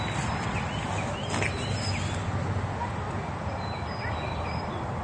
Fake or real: real